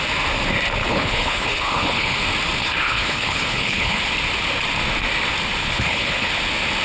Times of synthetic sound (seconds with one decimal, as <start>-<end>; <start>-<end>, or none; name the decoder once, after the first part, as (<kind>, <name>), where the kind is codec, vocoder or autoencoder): 0.8-2.2 (codec, HILCodec); 2.6-4.0; 5.6-6.3